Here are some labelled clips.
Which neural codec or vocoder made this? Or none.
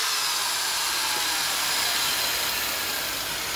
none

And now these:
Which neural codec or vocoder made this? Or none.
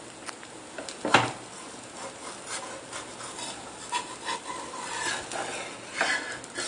none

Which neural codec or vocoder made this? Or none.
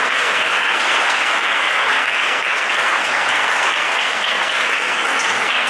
codec, SNAC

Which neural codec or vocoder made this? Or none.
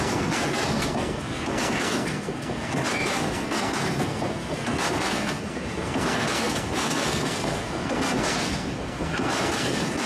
codec, SNAC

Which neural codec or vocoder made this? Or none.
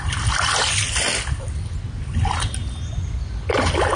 none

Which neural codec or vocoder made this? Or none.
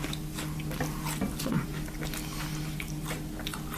none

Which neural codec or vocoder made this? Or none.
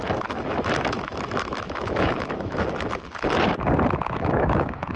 autoencoder, DAC-VAE